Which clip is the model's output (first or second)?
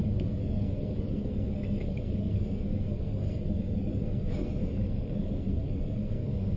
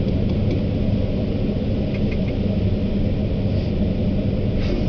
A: first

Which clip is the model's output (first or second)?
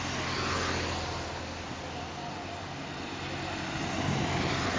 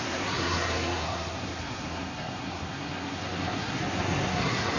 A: second